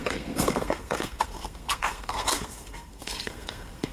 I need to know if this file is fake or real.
fake